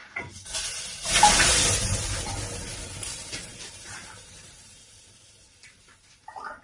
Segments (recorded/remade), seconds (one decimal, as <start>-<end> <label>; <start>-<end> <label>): 0.0-3.5 recorded; 3.5-5.0 remade; 5.0-6.6 recorded